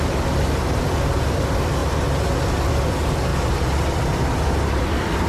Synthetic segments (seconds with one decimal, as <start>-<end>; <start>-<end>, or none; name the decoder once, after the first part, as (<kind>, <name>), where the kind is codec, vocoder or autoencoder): 0.0-1.8 (vocoder, BigVGAN v2); 2.7-5.3

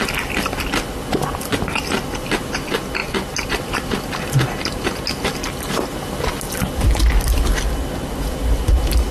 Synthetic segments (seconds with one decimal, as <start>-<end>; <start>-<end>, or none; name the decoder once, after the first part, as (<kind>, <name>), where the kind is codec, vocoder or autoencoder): none

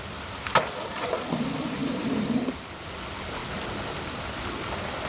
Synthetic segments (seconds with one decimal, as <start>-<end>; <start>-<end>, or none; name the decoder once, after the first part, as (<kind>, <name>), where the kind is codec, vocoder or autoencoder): 1.8-2.5 (vocoder, BigVGAN v2)

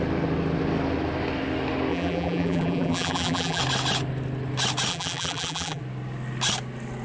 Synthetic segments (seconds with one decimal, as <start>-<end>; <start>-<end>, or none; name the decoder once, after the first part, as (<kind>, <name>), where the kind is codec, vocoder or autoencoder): 1.9-3.6 (vocoder, BigVGAN v2); 4.9-5.8